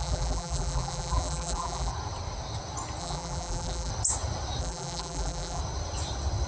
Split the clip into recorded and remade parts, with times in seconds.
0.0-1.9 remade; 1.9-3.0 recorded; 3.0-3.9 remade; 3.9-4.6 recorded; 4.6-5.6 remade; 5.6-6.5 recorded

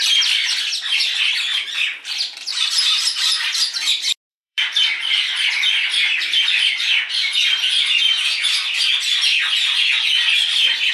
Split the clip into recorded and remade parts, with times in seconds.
0.0-2.5 recorded; 2.5-3.7 remade; 3.7-4.3 recorded; 4.3-4.8 remade; 4.8-10.9 recorded

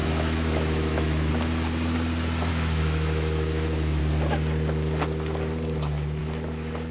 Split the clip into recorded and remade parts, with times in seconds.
0.0-1.3 remade; 1.3-2.5 recorded; 2.5-4.0 remade; 4.0-6.2 recorded; 6.2-6.9 remade

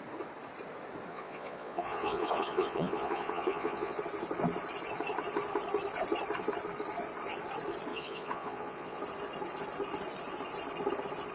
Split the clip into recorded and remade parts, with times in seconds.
0.0-1.1 recorded; 1.1-4.0 remade; 4.0-7.9 recorded; 7.9-9.0 remade; 9.0-11.3 recorded

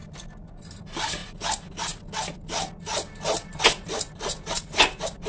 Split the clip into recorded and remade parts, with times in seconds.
0.0-5.3 recorded

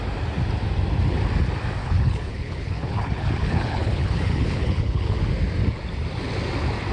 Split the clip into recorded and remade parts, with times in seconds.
0.0-1.8 recorded; 1.8-5.2 remade; 5.2-6.9 recorded

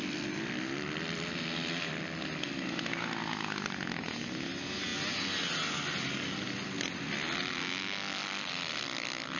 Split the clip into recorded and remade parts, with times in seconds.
0.0-9.4 recorded

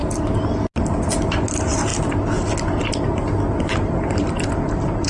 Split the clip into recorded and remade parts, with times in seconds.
0.0-5.1 recorded